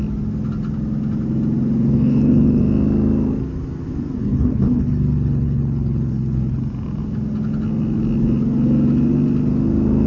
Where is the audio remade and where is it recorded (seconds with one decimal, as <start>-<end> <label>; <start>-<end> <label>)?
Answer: 0.0-1.9 recorded; 1.9-2.6 remade; 2.6-4.2 recorded; 4.2-6.6 remade; 6.6-10.1 recorded